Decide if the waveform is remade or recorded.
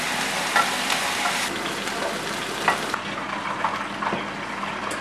recorded